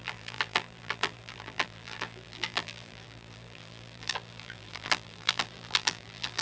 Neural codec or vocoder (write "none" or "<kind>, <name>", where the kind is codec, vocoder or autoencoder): vocoder, BigVGAN v2